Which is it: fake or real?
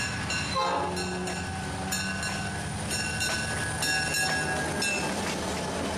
real